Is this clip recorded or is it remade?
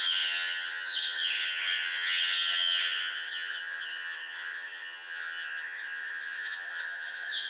remade